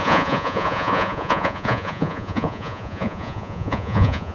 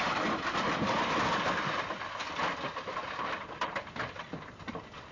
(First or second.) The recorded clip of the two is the second